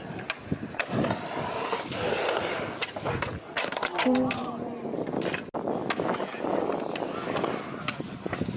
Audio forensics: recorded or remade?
recorded